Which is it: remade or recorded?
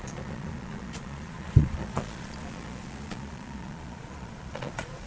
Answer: remade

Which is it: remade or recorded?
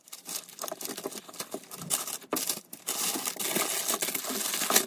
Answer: recorded